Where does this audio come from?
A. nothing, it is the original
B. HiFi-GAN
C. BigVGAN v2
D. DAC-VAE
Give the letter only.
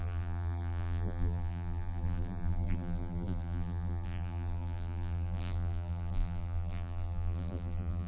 C